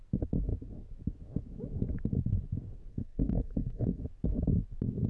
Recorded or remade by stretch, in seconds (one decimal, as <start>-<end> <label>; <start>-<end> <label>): 0.0-2.9 recorded; 2.9-4.0 remade; 4.0-5.1 recorded